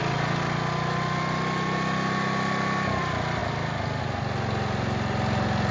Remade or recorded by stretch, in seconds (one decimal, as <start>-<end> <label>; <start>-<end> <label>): 0.0-5.7 recorded